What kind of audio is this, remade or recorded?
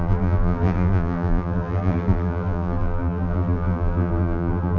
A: remade